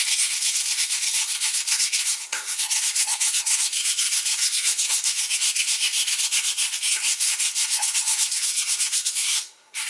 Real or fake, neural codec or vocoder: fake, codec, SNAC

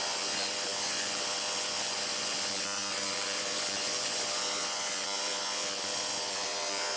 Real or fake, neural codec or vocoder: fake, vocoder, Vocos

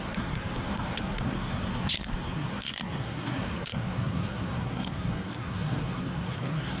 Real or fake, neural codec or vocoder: fake, codec, SNAC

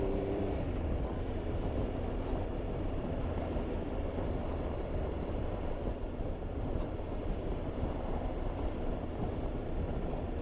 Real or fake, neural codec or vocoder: fake, vocoder, BigVGAN v2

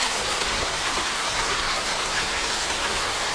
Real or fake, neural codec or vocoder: fake, codec, SNAC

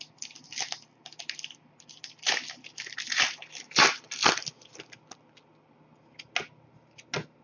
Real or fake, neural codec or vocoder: real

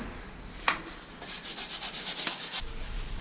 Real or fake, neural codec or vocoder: real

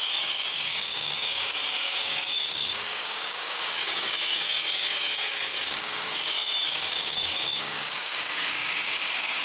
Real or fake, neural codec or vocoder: fake, codec, DAC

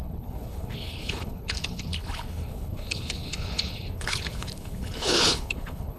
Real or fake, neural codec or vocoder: fake, codec, HILCodec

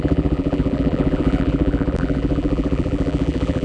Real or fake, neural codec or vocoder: fake, vocoder, BigVGAN v2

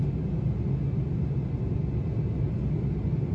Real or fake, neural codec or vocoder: real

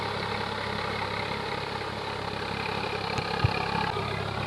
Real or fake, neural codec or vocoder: real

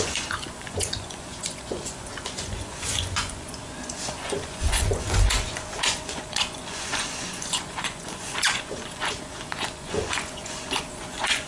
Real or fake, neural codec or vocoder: fake, vocoder, Vocos